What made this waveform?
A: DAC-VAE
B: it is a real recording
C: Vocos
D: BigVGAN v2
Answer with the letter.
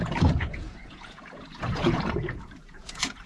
C